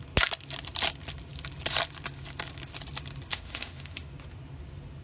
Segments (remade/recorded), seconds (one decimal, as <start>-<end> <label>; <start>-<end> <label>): 0.0-3.3 recorded; 3.3-4.1 remade; 4.1-5.0 recorded